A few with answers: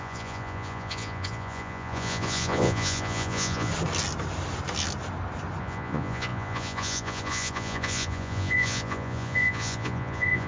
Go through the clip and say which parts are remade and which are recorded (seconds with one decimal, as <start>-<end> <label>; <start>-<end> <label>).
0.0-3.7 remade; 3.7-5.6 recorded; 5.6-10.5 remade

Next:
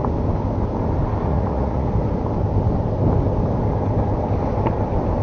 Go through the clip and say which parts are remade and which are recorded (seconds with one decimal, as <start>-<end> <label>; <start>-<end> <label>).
0.0-1.3 recorded; 1.3-1.9 remade; 1.9-5.2 recorded

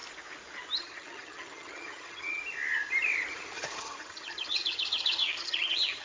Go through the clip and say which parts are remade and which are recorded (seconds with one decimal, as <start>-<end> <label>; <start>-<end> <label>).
0.0-0.8 recorded; 0.8-2.4 remade; 2.4-3.3 recorded; 3.3-6.0 remade

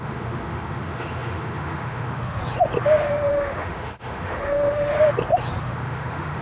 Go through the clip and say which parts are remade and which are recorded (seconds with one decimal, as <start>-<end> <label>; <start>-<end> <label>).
0.0-2.4 remade; 2.4-3.3 recorded; 3.3-4.9 remade; 4.9-5.6 recorded; 5.6-6.4 remade

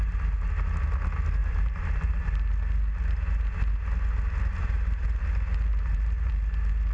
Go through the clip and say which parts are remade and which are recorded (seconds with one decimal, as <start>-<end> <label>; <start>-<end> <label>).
0.0-1.4 recorded; 1.4-2.2 remade; 2.2-5.7 recorded; 5.7-6.3 remade; 6.3-6.9 recorded

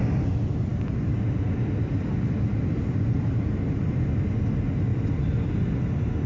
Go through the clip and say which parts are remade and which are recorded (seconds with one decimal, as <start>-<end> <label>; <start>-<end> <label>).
0.0-4.9 recorded; 4.9-5.5 remade; 5.5-6.3 recorded